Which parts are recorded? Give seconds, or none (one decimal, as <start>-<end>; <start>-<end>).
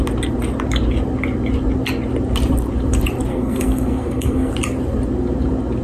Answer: 0.0-3.3; 4.5-5.8